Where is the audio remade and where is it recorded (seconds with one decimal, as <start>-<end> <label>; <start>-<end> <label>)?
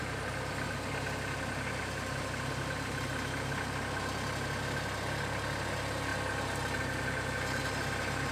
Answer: 0.0-8.3 recorded